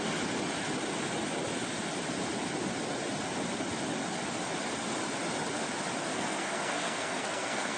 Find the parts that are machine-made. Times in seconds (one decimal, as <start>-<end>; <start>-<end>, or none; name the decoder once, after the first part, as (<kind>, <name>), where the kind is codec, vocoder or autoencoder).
6.1-7.8 (codec, SNAC)